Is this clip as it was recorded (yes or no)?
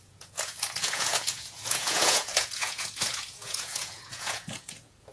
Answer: no